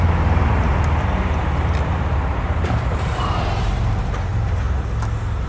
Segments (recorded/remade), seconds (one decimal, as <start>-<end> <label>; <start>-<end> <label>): 0.0-0.7 remade; 0.7-2.1 recorded; 2.1-4.3 remade; 4.3-5.5 recorded